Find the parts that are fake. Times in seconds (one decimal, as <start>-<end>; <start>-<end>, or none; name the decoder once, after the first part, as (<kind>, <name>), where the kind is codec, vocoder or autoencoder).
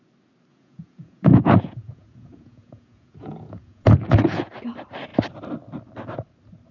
0.5-4.5 (vocoder, Vocos)